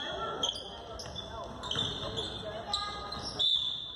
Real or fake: real